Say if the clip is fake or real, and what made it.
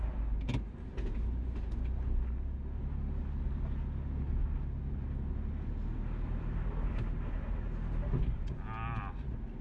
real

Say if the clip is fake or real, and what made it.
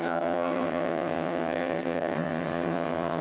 fake, vocoder, HiFi-GAN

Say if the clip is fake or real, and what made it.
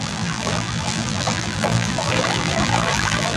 fake, vocoder, BigVGAN v2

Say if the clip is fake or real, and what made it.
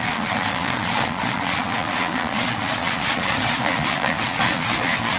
fake, vocoder, Vocos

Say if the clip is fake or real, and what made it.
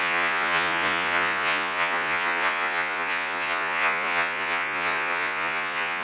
fake, vocoder, Vocos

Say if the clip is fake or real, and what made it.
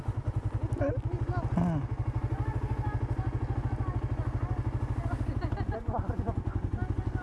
real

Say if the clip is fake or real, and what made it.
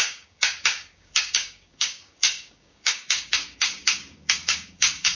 fake, codec, DAC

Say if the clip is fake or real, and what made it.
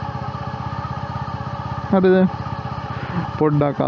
real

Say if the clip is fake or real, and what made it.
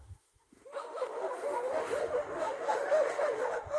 fake, autoencoder, DAC-VAE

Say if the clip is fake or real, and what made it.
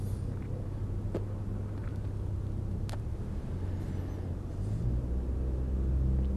real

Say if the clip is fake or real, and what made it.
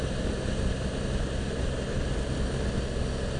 real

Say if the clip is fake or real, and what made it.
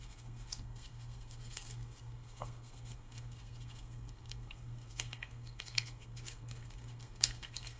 fake, codec, SNAC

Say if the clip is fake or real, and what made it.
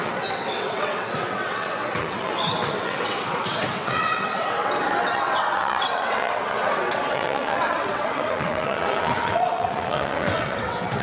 fake, vocoder, WaveNeXt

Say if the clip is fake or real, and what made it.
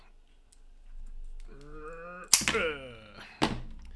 real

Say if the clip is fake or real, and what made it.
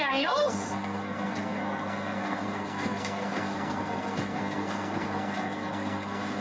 fake, codec, SNAC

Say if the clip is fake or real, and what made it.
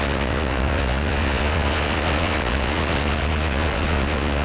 fake, vocoder, Vocos